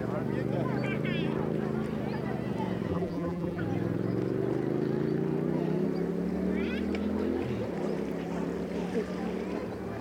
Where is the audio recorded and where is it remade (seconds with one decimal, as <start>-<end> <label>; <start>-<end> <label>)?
0.0-2.9 recorded; 2.9-3.6 remade; 3.6-10.0 recorded